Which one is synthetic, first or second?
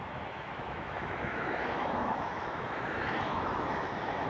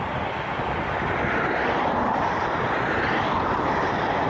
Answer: first